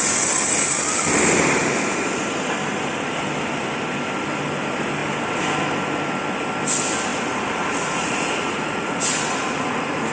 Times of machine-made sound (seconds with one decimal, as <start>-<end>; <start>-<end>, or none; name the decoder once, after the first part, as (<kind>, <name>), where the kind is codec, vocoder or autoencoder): 7.1-10.1 (vocoder, Vocos)